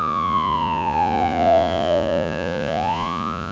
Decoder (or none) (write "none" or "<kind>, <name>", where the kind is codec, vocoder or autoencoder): vocoder, Vocos